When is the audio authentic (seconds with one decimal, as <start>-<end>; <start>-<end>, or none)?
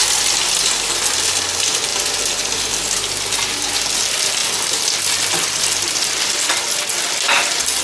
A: 0.0-7.8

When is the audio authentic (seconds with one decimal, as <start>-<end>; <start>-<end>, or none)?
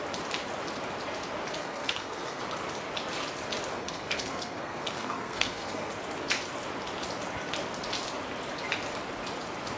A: 0.0-1.6; 2.4-3.7; 5.9-9.8